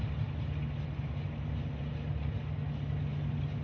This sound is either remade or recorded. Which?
recorded